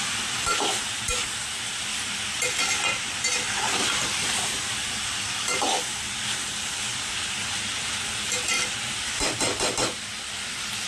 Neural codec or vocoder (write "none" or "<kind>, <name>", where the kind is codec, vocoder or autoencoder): none